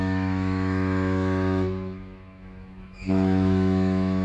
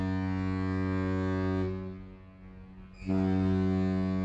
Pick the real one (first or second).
second